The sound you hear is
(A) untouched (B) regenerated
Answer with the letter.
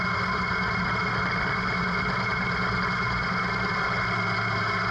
A